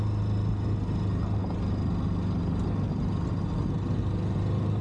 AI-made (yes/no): no